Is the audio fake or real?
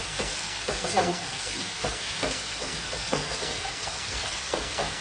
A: fake